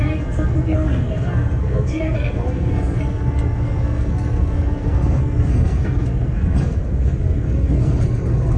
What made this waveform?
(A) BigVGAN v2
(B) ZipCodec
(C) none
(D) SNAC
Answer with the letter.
D